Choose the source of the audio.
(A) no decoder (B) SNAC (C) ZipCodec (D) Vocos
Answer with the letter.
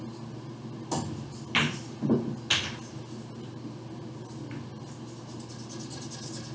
A